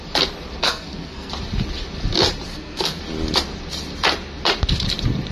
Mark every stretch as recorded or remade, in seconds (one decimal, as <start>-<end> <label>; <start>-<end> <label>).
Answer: 0.0-0.6 recorded; 0.6-1.3 remade; 1.3-2.5 recorded; 2.5-3.0 remade; 3.0-5.3 recorded